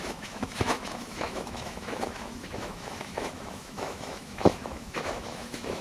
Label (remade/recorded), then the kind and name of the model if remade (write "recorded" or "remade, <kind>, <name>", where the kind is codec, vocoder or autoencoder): remade, autoencoder, DAC-VAE